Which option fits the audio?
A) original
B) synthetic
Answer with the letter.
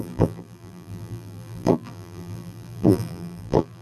B